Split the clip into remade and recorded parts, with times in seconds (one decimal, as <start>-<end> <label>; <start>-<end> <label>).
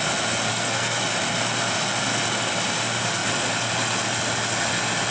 0.0-0.5 recorded; 0.5-1.0 remade; 1.0-5.1 recorded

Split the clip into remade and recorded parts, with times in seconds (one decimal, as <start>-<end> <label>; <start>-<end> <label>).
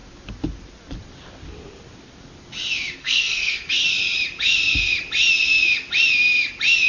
0.0-3.0 recorded; 3.0-3.7 remade; 3.7-6.9 recorded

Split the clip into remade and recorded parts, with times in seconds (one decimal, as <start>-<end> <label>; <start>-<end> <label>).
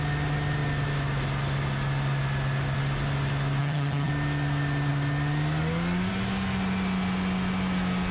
0.0-3.6 recorded; 3.6-4.1 remade; 4.1-8.1 recorded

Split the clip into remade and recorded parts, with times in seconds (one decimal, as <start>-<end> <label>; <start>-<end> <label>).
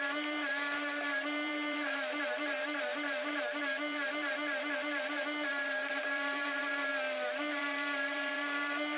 0.0-6.9 remade; 6.9-7.6 recorded; 7.6-9.0 remade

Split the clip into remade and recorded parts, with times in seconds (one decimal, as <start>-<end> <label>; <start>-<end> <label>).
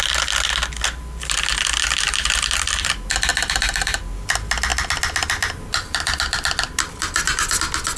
0.0-3.3 recorded; 3.3-4.0 remade; 4.0-4.7 recorded; 4.7-7.6 remade; 7.6-8.0 recorded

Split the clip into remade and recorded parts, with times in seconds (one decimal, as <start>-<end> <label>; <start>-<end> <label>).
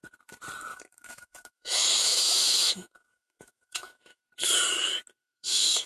0.0-0.7 recorded; 0.7-4.2 remade; 4.2-5.2 recorded; 5.2-5.9 remade